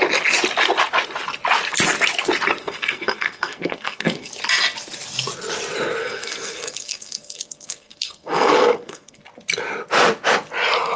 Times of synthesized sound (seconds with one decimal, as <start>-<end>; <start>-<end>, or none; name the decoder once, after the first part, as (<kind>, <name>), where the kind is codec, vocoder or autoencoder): 2.6-4.3 (codec, SNAC); 6.0-9.2

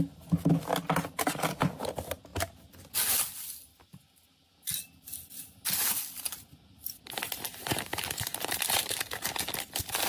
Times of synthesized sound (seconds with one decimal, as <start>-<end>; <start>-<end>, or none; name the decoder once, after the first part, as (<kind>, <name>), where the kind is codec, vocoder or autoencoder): 7.9-9.1 (vocoder, BigVGAN v2)

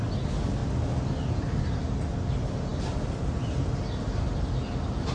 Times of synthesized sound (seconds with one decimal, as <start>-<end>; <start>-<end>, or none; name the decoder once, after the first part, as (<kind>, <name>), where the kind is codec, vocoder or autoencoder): none

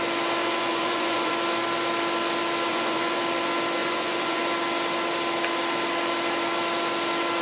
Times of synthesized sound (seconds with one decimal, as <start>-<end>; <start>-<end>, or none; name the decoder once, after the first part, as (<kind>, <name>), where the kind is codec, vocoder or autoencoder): 0.4-1.3 (vocoder, Vocos); 2.7-3.2; 3.8-4.4

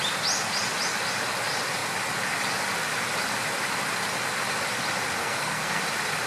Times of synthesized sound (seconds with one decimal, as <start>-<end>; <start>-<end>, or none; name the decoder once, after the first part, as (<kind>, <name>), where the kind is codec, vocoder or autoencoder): 5.2-5.8 (codec, SNAC)

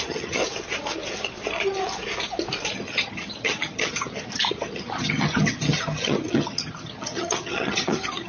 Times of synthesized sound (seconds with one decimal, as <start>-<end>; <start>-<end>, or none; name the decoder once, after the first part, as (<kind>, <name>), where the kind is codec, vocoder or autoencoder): 0.0-0.4 (vocoder, HiFi-GAN); 2.7-8.3